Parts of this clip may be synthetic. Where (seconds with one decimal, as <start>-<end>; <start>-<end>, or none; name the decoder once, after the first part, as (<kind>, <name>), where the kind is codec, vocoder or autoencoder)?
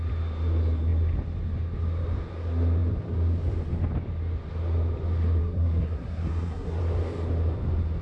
5.4-6.8 (codec, SNAC)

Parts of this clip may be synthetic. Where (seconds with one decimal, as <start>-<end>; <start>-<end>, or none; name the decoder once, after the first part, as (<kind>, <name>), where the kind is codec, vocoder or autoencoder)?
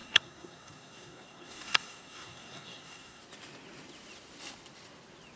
0.0-3.2 (codec, SNAC)